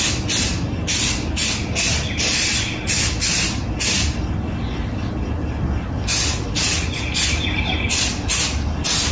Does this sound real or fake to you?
real